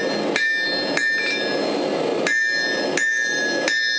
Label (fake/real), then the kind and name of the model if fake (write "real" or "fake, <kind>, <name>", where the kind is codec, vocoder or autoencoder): real